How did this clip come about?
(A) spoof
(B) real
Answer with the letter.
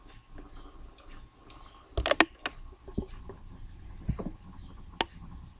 B